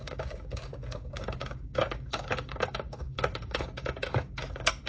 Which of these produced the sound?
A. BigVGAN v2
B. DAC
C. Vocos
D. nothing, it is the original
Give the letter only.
B